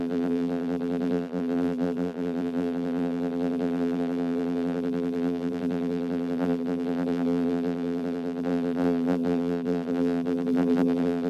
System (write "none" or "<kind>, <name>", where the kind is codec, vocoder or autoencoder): vocoder, BigVGAN v2